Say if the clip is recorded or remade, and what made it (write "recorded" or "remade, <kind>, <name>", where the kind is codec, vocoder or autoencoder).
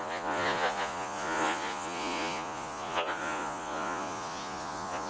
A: remade, vocoder, Vocos